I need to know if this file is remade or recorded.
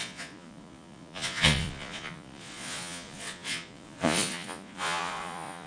remade